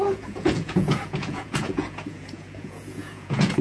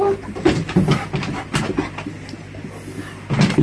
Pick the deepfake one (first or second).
first